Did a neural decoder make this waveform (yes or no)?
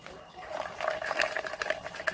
no